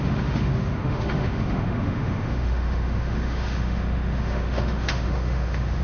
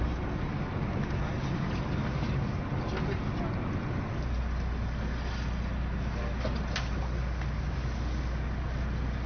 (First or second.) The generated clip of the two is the first